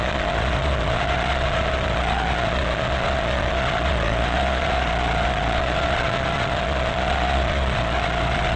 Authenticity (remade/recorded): remade